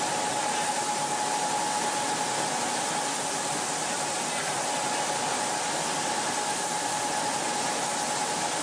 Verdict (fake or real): real